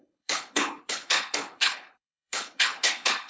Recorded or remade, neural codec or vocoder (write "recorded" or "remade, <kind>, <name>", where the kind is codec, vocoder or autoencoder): remade, codec, HILCodec